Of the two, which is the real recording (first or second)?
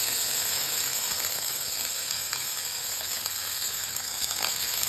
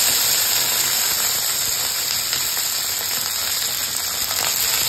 second